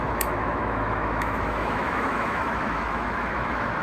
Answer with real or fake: fake